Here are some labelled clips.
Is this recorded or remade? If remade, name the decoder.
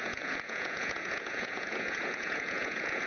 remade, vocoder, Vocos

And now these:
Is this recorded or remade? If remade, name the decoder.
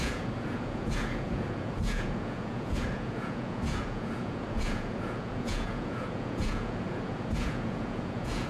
remade, vocoder, Vocos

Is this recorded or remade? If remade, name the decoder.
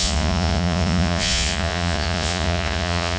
remade, vocoder, Vocos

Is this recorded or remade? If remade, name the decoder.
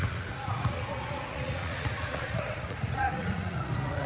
remade, vocoder, Vocos